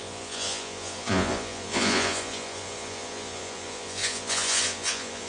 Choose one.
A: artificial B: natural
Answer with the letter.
A